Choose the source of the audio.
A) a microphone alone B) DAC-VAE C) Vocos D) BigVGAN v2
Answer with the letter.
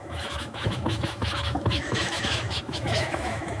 B